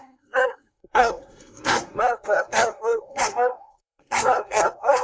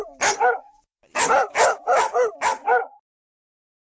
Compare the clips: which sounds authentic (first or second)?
second